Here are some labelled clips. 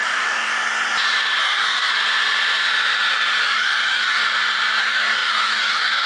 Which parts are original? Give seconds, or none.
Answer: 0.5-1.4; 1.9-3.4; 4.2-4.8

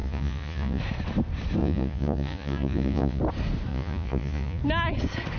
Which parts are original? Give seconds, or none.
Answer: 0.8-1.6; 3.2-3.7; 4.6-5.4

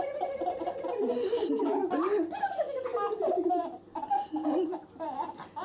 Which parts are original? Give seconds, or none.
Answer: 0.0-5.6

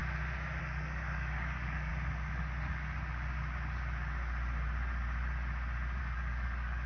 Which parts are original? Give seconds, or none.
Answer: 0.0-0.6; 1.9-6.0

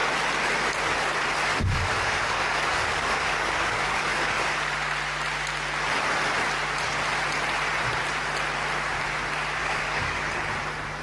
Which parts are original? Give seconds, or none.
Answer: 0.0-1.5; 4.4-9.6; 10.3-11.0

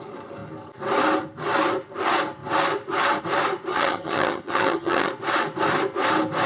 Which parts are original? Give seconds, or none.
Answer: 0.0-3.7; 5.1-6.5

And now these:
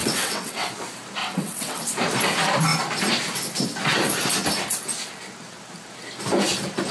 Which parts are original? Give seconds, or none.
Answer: 0.7-1.2; 1.8-6.9